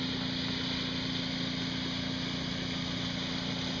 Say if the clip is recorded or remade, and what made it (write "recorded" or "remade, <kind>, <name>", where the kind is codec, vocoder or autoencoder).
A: recorded